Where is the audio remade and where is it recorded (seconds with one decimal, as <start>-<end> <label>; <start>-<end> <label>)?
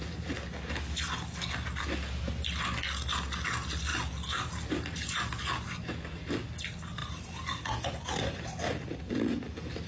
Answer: 0.0-7.0 recorded; 7.0-9.9 remade